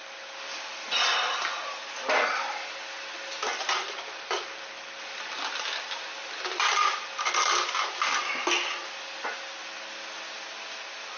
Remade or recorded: recorded